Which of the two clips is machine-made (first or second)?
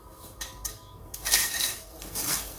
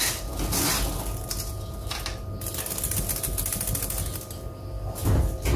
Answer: first